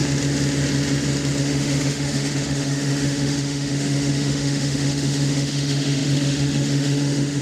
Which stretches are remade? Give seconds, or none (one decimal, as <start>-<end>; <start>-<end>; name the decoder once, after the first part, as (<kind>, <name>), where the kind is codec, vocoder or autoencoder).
1.4-7.4 (autoencoder, DAC-VAE)